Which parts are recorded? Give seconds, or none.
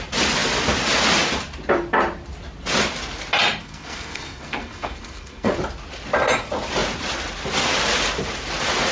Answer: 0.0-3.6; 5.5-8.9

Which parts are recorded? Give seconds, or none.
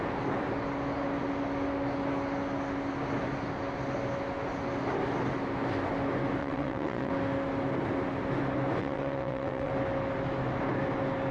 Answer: 0.0-6.4; 7.1-8.8; 9.7-11.3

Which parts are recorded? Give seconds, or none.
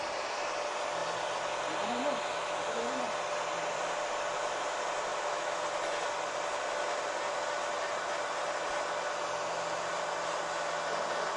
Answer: 0.0-2.3; 3.0-5.1; 5.6-11.4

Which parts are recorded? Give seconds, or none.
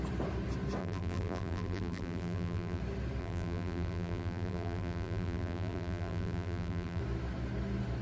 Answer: 0.0-0.8; 2.8-3.2; 7.0-8.0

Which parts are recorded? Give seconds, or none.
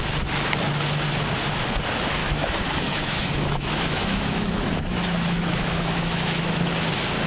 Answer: 0.0-2.2; 6.6-7.3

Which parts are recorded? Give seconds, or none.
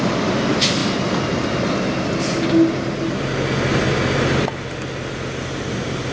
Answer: 0.0-6.1